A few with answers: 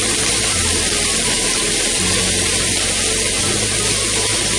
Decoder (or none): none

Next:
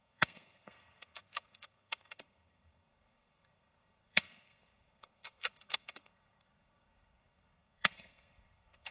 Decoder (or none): codec, SNAC